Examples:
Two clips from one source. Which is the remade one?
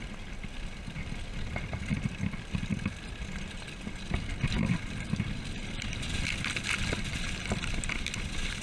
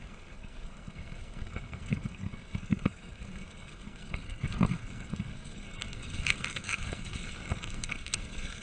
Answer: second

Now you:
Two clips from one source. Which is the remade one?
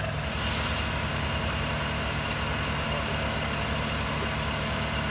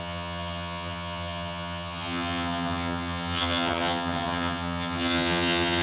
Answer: second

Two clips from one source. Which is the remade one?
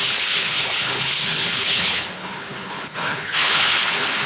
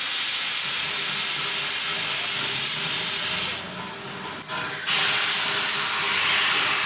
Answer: first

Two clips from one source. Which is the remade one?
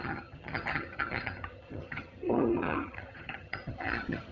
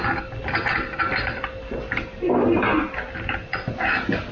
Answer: first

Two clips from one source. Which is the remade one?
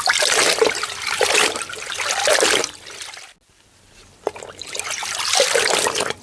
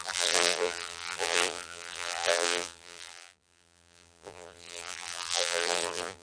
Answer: second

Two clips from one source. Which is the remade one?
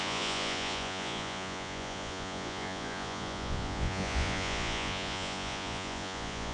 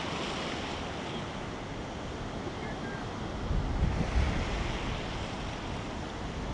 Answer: first